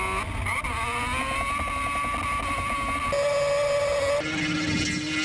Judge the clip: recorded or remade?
recorded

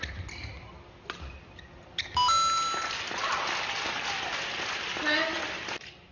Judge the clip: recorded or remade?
recorded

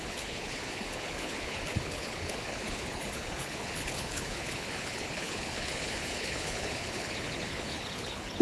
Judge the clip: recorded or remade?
remade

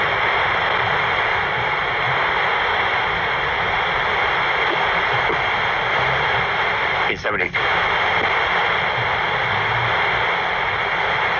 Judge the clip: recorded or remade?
recorded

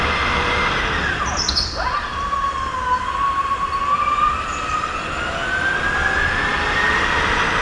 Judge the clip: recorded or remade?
recorded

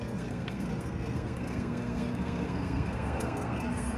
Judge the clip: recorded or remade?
remade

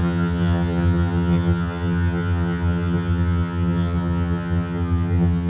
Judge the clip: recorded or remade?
remade